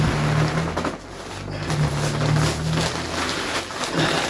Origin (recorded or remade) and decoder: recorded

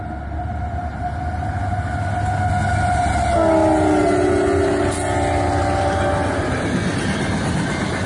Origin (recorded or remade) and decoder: recorded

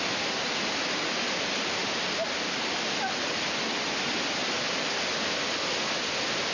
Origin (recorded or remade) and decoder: recorded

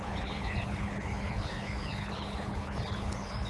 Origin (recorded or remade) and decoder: remade, codec, HILCodec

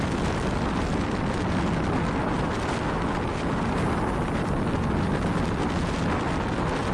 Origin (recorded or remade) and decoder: recorded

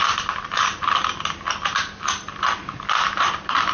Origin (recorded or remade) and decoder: recorded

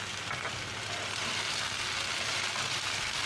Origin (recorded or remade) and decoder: recorded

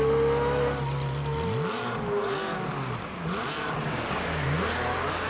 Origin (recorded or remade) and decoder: recorded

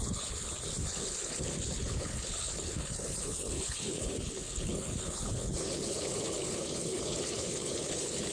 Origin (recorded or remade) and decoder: remade, codec, HILCodec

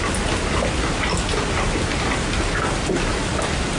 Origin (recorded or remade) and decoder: recorded